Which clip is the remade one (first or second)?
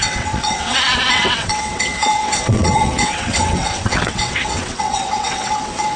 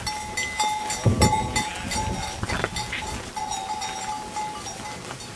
first